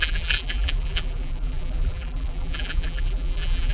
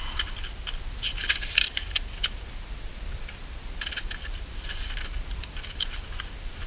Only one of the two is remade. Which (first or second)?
first